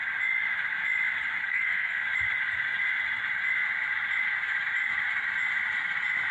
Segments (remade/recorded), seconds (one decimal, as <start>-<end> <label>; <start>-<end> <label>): 0.0-1.4 recorded; 1.4-2.0 remade; 2.0-6.3 recorded